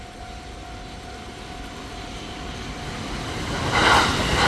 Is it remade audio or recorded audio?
recorded